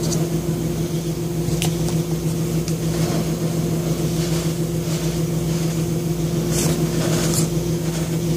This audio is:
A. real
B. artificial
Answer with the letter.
A